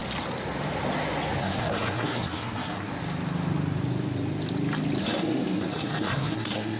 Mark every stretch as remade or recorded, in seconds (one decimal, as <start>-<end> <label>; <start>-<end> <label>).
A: 0.0-1.4 recorded; 1.4-2.9 remade; 2.9-5.0 recorded; 5.0-6.8 remade